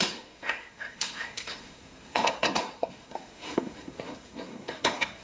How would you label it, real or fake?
fake